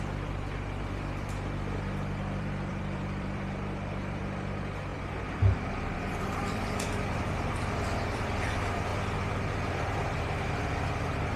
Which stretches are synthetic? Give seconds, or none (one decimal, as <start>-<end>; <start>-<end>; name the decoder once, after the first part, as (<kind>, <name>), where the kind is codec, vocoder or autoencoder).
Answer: 0.0-8.9 (vocoder, BigVGAN v2); 9.7-11.4